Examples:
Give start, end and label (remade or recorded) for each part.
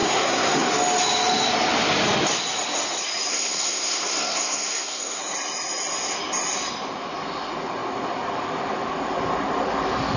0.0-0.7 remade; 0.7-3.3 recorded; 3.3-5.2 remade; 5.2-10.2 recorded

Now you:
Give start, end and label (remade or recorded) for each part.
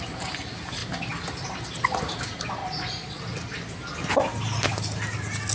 0.0-2.6 recorded; 2.6-3.2 remade; 3.2-5.5 recorded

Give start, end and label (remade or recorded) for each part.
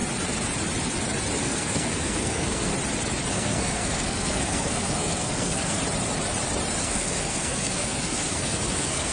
0.0-1.4 recorded; 1.4-2.7 remade; 2.7-3.3 recorded; 3.3-5.8 remade; 5.8-6.8 recorded; 6.8-9.1 remade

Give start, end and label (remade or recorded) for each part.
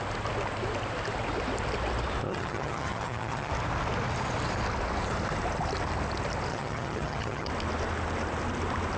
0.0-2.3 recorded; 2.3-3.5 remade; 3.5-6.5 recorded; 6.5-7.5 remade; 7.5-9.0 recorded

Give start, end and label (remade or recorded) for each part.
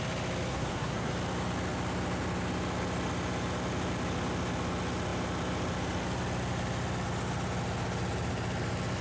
0.0-0.5 recorded; 0.5-1.1 remade; 1.1-9.0 recorded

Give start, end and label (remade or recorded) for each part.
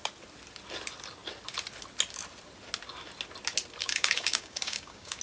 0.0-3.8 recorded; 3.8-5.2 remade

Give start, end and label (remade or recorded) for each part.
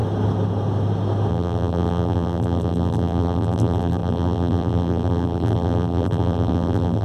0.0-1.3 recorded; 1.3-7.0 remade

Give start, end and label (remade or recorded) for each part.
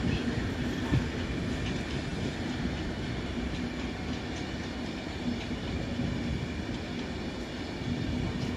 0.0-8.6 recorded